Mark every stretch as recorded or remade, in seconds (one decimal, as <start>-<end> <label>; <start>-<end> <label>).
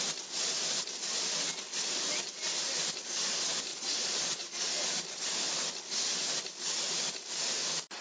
0.0-3.7 recorded; 3.7-4.7 remade; 4.7-8.0 recorded